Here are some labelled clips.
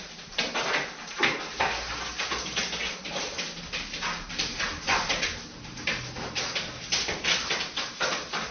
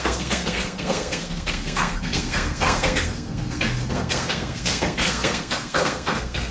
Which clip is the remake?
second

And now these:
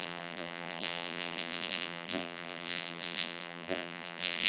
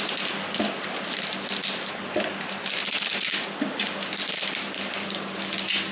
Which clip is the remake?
first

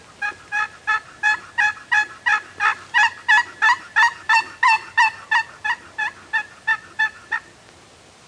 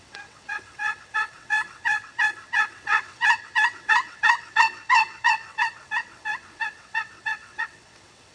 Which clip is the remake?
second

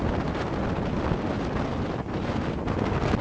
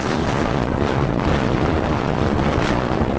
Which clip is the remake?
second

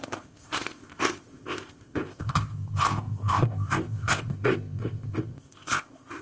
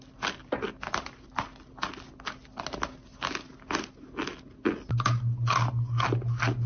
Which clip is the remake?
first